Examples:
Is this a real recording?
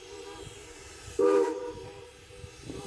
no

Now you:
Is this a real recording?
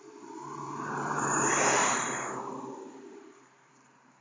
no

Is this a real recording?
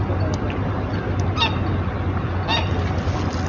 yes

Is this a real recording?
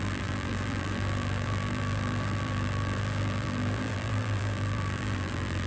no